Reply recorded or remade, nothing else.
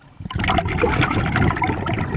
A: recorded